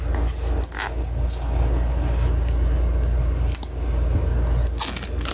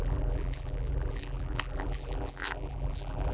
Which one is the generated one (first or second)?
second